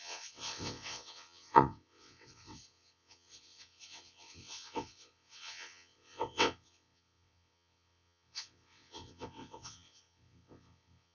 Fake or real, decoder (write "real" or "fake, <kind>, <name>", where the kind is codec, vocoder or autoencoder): fake, vocoder, WaveNeXt